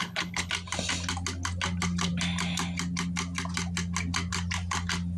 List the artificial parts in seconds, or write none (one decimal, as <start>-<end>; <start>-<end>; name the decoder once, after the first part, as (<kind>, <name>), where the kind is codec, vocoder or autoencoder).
0.0-0.5 (codec, HILCodec)